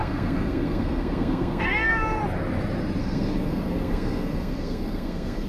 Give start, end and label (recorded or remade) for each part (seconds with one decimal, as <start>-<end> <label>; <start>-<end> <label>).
0.0-2.2 remade; 2.2-3.0 recorded; 3.0-5.5 remade